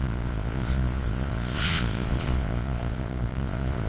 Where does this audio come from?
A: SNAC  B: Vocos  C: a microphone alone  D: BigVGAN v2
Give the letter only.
B